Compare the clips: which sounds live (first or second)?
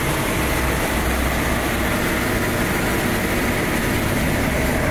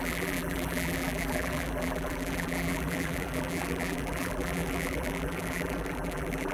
first